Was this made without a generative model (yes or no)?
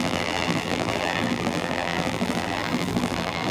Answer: no